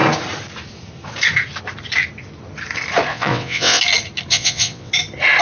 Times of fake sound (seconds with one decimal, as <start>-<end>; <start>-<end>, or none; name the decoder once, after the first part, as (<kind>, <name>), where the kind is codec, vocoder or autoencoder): 3.1-3.8 (vocoder, WaveNeXt); 4.3-4.9